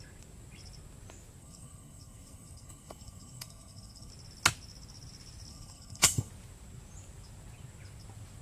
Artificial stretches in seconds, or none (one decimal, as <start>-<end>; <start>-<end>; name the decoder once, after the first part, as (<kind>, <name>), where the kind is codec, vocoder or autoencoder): 1.4-4.1 (codec, SNAC); 5.5-6.3